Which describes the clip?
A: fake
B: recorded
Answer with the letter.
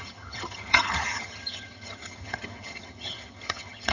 A